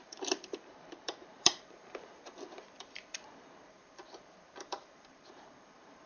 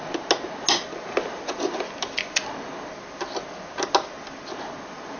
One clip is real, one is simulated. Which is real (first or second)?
second